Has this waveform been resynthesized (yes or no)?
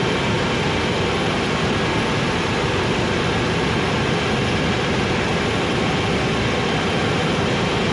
yes